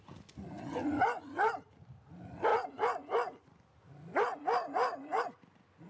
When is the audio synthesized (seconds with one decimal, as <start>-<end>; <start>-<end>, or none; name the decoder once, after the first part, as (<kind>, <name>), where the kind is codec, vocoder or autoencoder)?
none